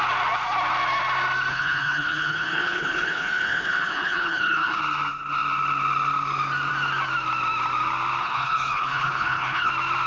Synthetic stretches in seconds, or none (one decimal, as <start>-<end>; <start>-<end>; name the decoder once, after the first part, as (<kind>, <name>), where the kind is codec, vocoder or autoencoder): 1.5-4.8 (codec, HILCodec); 8.2-9.7

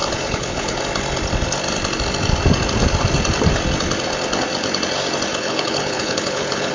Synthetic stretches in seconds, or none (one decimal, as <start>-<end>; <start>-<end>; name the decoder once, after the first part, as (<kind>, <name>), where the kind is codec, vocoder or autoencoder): 0.0-0.8 (codec, HILCodec); 5.3-6.7

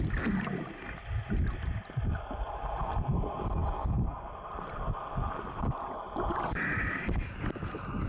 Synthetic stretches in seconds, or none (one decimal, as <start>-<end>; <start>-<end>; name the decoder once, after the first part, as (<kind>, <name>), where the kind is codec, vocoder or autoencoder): none

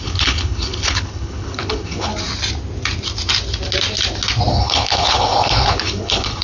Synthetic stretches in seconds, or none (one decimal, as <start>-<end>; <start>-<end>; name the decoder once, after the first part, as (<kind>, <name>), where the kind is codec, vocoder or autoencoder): 0.0-2.1 (codec, HILCodec); 4.5-6.4

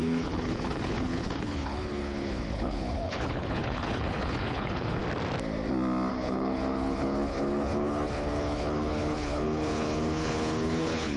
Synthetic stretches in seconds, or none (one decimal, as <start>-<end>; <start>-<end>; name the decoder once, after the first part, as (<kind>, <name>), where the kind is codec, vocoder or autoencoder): 0.0-5.0 (codec, HILCodec); 6.1-11.2